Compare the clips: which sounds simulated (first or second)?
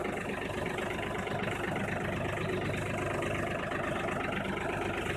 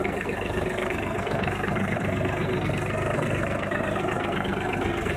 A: second